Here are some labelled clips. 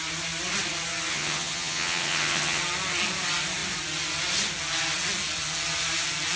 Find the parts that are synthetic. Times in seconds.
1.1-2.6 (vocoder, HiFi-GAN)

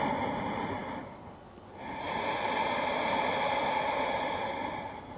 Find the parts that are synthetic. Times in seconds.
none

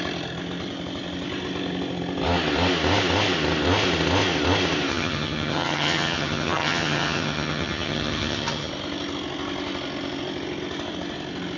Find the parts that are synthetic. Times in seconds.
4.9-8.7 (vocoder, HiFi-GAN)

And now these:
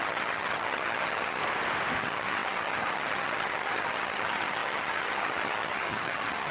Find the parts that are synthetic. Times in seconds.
0.0-1.4 (vocoder, HiFi-GAN); 2.0-6.5